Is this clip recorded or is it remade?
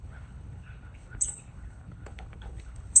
remade